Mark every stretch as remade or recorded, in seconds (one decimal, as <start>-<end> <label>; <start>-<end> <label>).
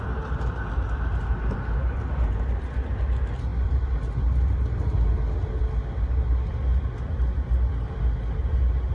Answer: 0.0-8.9 recorded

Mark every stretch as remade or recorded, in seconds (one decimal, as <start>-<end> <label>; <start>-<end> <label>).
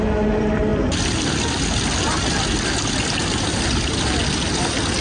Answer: 0.0-5.0 recorded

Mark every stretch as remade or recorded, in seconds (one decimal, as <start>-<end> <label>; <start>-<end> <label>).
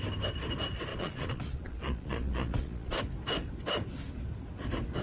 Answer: 0.0-0.9 recorded; 0.9-3.0 remade; 3.0-5.0 recorded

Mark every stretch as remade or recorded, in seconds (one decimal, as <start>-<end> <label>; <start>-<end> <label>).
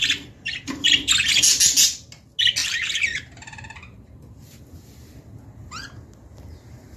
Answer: 0.0-0.4 recorded; 0.4-1.1 remade; 1.1-2.6 recorded; 2.6-4.6 remade; 4.6-7.0 recorded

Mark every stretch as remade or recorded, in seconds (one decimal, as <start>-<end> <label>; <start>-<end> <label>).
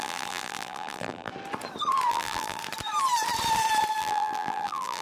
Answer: 0.0-1.3 remade; 1.3-2.1 recorded; 2.1-2.6 remade; 2.6-4.0 recorded; 4.0-5.0 remade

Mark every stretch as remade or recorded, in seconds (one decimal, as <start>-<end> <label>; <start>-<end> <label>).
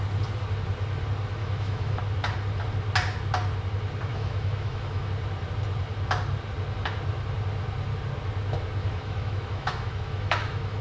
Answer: 0.0-1.4 recorded; 1.4-2.0 remade; 2.0-4.1 recorded; 4.1-5.1 remade; 5.1-8.8 recorded; 8.8-10.8 remade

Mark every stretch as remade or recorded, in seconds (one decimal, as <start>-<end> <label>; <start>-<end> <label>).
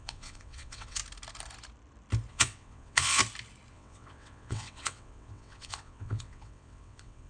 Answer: 0.0-1.0 remade; 1.0-2.3 recorded; 2.3-3.2 remade; 3.2-3.7 recorded; 3.7-7.3 remade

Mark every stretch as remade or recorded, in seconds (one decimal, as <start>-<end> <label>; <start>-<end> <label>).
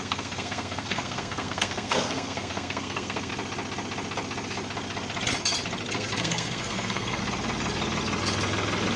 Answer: 0.0-3.3 remade; 3.3-5.9 recorded; 5.9-7.2 remade; 7.2-9.0 recorded